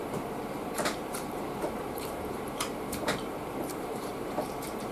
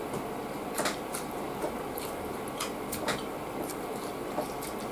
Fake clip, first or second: first